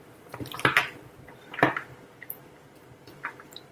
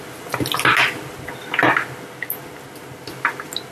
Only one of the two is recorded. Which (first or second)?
second